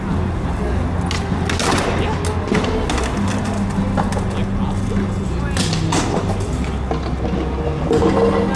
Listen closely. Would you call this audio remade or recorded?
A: recorded